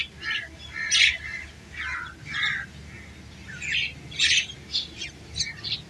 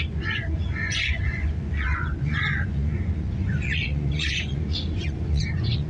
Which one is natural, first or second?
first